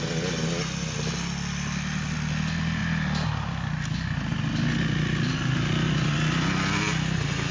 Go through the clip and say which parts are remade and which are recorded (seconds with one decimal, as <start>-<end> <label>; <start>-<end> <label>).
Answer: 0.0-7.5 recorded